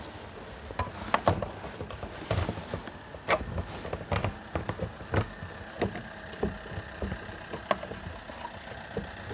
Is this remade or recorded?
recorded